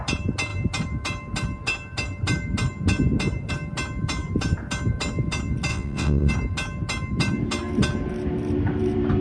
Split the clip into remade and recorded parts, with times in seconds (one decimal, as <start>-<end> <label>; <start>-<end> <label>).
0.0-5.7 recorded; 5.7-6.3 remade; 6.3-9.2 recorded